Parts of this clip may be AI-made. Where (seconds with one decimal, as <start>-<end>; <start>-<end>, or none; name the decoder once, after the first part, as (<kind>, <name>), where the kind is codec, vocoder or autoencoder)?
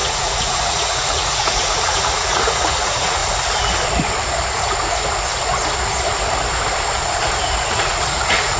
0.0-3.2 (vocoder, Vocos); 7.6-8.6